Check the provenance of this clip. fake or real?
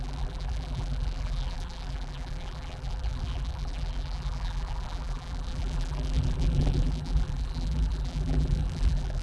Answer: fake